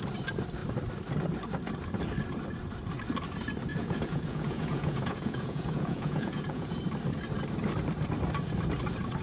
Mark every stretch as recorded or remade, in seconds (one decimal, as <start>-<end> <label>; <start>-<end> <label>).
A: 0.0-3.7 recorded; 3.7-6.8 remade; 6.8-9.2 recorded